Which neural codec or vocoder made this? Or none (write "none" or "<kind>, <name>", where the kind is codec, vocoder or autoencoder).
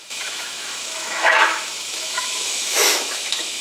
autoencoder, DAC-VAE